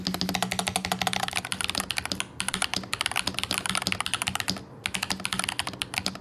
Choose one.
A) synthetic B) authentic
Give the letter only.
B